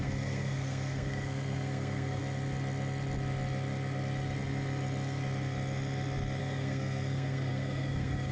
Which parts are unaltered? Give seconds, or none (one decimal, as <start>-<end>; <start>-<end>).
2.2-6.4